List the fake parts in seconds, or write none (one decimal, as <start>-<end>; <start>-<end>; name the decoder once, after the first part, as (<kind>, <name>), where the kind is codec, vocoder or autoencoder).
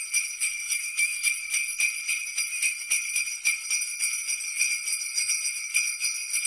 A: 0.6-1.3 (autoencoder, DAC-VAE); 2.5-3.0